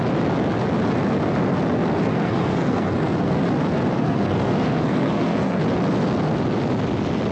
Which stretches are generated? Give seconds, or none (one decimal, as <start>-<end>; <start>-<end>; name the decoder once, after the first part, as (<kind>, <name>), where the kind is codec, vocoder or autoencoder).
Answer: 2.1-3.4 (codec, SNAC); 3.9-5.6